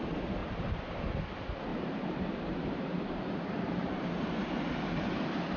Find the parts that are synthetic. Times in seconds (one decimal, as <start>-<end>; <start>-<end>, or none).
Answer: 0.4-0.9; 1.7-4.5